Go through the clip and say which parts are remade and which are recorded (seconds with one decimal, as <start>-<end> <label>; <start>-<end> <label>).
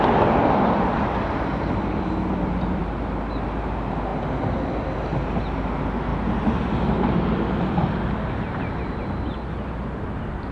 0.0-0.4 recorded; 0.4-2.8 remade; 2.8-10.5 recorded